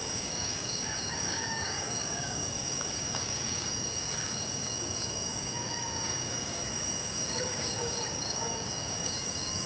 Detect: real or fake fake